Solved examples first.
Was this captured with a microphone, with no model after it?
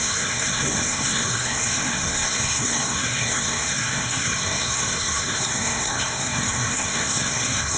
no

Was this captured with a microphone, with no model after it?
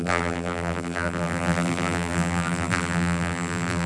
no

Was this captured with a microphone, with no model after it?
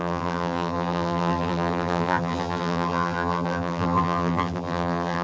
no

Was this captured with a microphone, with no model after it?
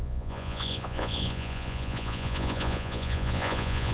no